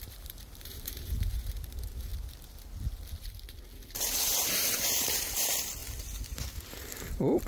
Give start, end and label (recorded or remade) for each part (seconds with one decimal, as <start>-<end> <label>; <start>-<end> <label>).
0.0-2.1 remade; 2.1-4.0 recorded; 4.0-5.8 remade; 5.8-6.7 recorded; 6.7-7.5 remade

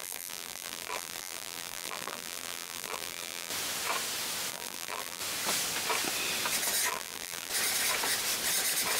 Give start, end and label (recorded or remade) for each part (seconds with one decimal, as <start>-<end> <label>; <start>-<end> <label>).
0.0-3.5 remade; 3.5-4.5 recorded; 4.5-5.2 remade; 5.2-6.9 recorded; 6.9-7.5 remade; 7.5-9.0 recorded

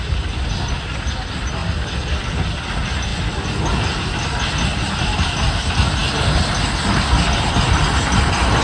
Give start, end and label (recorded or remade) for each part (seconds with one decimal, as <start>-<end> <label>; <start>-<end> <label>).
0.0-1.6 recorded; 1.6-2.2 remade; 2.2-8.6 recorded

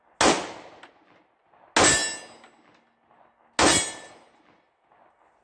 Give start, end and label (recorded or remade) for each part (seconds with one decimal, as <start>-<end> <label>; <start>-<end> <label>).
0.0-5.4 recorded

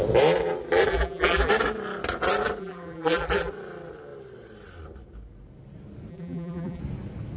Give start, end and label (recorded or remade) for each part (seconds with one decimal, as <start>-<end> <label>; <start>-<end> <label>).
0.0-0.9 recorded; 0.9-1.5 remade; 1.5-2.6 recorded; 2.6-3.5 remade; 3.5-6.1 recorded; 6.1-6.8 remade; 6.8-7.4 recorded

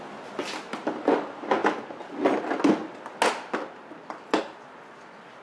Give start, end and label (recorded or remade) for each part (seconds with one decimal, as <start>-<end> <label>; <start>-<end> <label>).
0.0-5.4 recorded

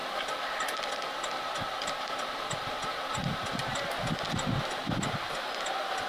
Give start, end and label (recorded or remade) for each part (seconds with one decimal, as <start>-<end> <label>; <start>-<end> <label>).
0.0-3.7 remade; 3.7-6.1 recorded

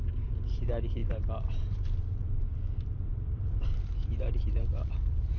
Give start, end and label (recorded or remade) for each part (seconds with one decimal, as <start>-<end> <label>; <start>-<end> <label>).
0.0-5.4 remade